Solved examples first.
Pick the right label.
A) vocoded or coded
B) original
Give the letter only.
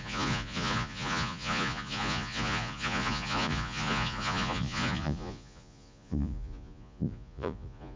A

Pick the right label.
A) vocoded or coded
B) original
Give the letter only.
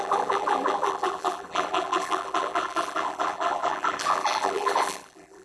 A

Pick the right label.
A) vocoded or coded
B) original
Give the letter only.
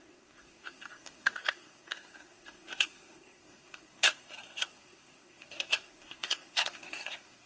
A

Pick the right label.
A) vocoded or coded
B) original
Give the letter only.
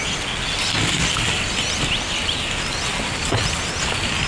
B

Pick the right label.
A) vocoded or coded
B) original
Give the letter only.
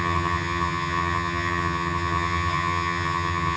A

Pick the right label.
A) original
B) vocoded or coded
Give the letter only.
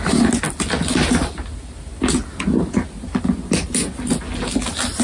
A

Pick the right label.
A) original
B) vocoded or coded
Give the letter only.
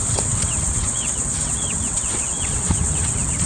B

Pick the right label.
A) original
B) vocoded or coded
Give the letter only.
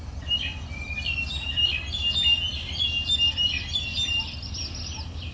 A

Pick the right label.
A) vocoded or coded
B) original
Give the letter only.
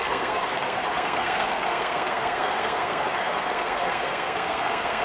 A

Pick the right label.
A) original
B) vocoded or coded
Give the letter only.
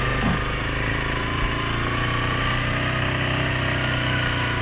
A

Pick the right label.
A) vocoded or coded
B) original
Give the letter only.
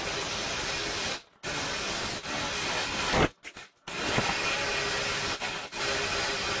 B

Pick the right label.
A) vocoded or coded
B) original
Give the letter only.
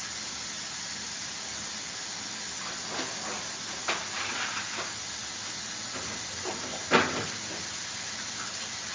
B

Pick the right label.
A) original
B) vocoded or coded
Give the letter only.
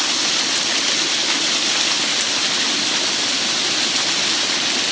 A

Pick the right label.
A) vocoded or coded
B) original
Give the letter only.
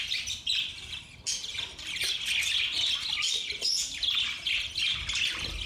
B